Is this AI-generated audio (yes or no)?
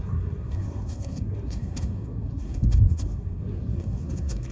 yes